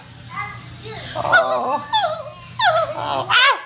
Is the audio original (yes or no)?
yes